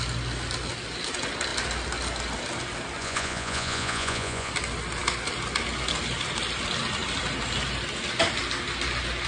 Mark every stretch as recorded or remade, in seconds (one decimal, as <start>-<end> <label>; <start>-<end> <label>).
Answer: 0.0-3.0 recorded; 3.0-4.5 remade; 4.5-9.3 recorded